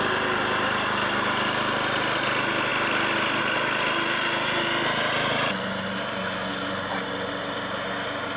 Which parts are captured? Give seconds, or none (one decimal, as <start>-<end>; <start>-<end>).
0.0-8.4